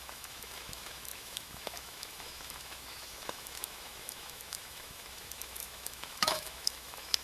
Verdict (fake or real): fake